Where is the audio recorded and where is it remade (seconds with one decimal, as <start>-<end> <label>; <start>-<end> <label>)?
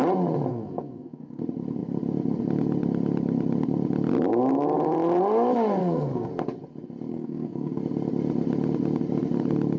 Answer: 0.0-0.5 recorded; 0.5-1.4 remade; 1.4-5.8 recorded; 5.8-6.3 remade; 6.3-7.1 recorded; 7.1-7.8 remade; 7.8-9.8 recorded